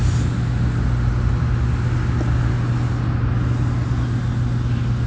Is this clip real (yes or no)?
yes